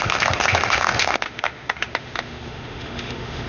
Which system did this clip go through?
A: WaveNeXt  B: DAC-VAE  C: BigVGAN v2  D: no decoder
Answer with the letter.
B